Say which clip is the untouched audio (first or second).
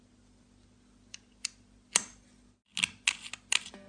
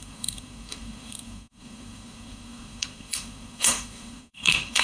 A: first